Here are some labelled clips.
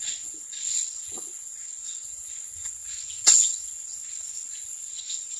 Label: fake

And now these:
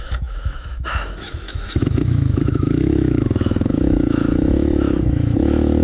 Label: fake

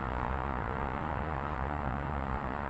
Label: fake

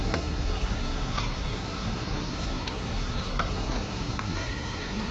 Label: fake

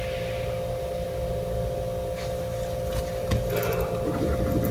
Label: real